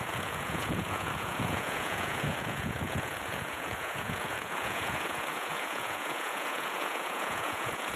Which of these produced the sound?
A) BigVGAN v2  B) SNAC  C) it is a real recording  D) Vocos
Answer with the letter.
D